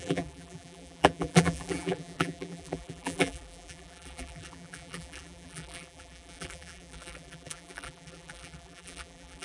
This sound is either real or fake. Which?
fake